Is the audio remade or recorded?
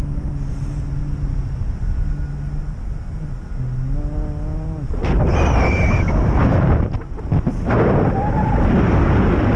recorded